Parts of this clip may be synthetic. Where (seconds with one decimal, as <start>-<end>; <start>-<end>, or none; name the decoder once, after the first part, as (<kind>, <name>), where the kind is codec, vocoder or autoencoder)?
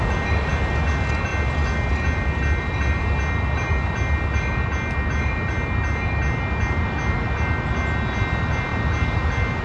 none